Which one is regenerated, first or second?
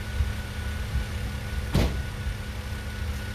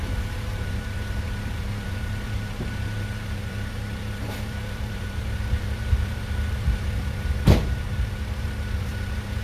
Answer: second